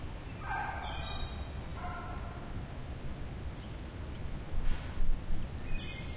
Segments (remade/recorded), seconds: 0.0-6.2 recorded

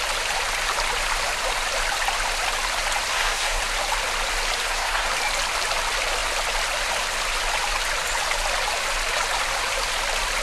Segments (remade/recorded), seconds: 0.0-3.1 recorded; 3.1-3.6 remade; 3.6-4.6 recorded; 4.6-5.1 remade; 5.1-10.4 recorded

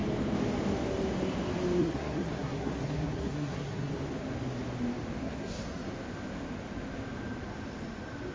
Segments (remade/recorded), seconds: 0.0-1.8 recorded; 1.8-3.9 remade; 3.9-5.2 recorded; 5.2-5.9 remade; 5.9-8.3 recorded

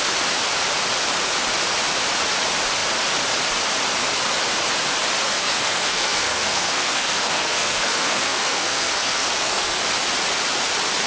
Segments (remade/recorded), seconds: 0.0-5.2 recorded; 5.2-9.8 remade; 9.8-11.1 recorded

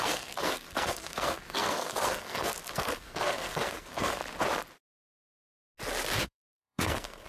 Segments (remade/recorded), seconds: 0.0-4.2 remade; 4.2-6.2 recorded; 6.2-7.3 remade